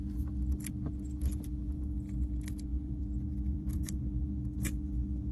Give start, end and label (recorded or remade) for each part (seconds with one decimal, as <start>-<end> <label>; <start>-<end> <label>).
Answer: 0.0-2.7 recorded; 2.7-4.0 remade; 4.0-5.3 recorded